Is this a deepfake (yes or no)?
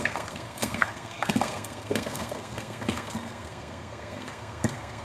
yes